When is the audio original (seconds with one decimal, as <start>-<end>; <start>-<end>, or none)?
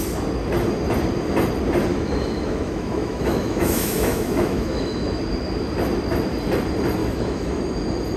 0.0-1.9; 5.2-7.0; 7.5-8.2